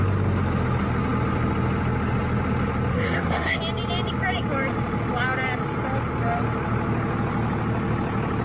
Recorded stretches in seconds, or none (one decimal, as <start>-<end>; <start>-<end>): 0.0-2.9; 3.6-8.4